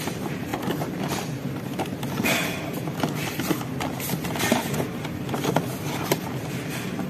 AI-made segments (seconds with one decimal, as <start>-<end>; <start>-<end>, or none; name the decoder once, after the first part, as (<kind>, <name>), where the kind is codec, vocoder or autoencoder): none